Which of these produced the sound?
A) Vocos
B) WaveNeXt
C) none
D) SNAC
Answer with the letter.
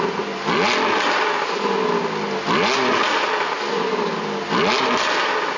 C